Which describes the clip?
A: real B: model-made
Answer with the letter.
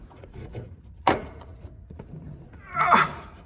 B